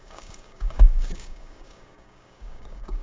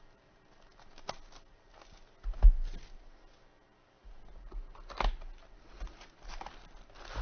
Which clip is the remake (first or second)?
first